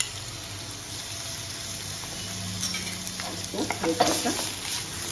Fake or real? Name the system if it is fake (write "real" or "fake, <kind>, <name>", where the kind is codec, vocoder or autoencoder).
real